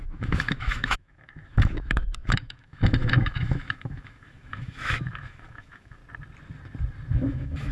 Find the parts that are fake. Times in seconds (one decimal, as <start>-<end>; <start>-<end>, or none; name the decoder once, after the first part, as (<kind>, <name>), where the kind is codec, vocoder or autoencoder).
0.0-6.0 (autoencoder, DAC-VAE); 7.1-7.7